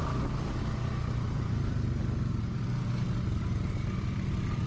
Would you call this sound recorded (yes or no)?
yes